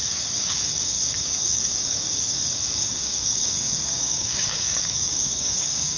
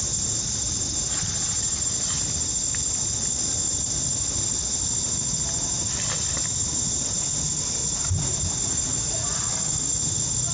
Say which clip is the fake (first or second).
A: first